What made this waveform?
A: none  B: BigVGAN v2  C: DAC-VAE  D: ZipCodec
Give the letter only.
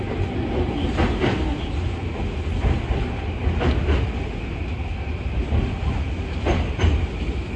A